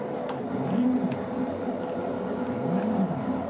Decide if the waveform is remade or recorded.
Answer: recorded